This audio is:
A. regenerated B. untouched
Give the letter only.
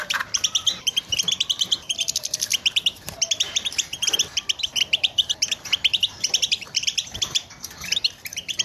A